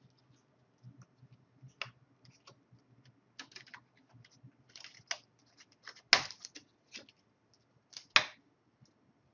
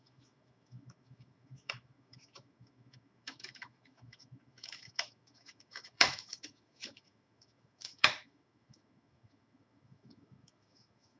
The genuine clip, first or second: first